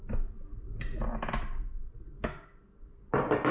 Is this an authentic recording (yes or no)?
yes